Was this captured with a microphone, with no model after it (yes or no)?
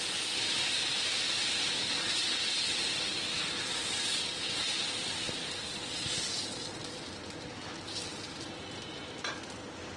yes